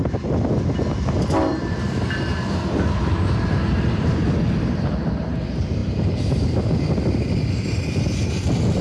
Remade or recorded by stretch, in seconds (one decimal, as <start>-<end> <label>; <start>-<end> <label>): 0.0-1.5 recorded; 1.5-4.4 remade; 4.4-5.8 recorded; 5.8-6.6 remade; 6.6-8.8 recorded